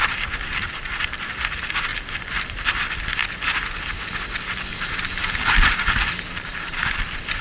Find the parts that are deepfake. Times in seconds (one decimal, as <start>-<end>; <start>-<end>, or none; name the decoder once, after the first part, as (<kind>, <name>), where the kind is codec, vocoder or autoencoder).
0.5-1.3 (vocoder, BigVGAN v2); 1.9-2.7; 4.7-6.5